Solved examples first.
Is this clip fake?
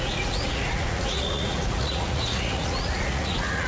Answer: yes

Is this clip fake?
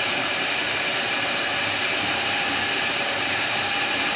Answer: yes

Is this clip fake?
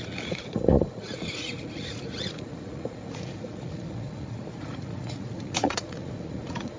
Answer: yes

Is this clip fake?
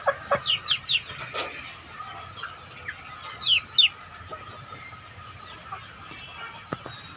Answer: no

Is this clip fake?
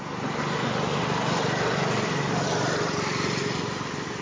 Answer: no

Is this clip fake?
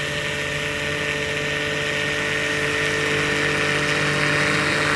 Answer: no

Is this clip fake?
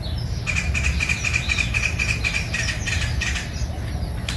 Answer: no